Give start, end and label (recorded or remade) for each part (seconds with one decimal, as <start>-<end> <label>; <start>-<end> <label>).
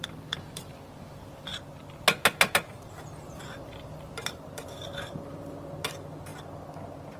0.0-1.5 remade; 1.5-2.9 recorded; 2.9-6.3 remade; 6.3-7.2 recorded